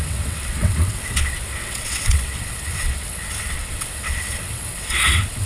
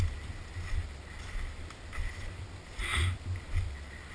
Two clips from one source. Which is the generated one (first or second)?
first